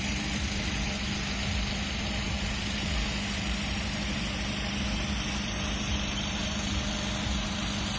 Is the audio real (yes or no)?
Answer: yes